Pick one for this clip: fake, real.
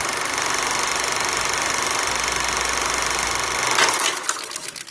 real